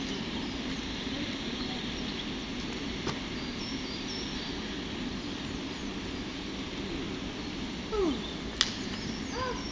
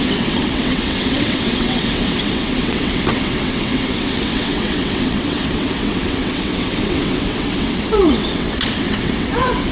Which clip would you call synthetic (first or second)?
second